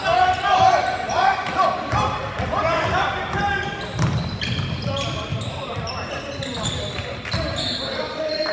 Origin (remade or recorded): recorded